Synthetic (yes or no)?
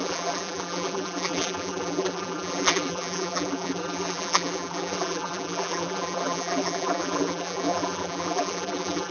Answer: yes